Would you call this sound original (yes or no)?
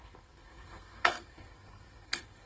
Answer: no